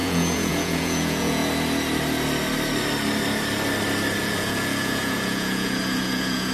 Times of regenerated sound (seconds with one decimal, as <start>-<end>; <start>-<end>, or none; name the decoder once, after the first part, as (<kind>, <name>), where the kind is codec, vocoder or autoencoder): 0.0-1.4 (vocoder, Vocos); 4.2-6.5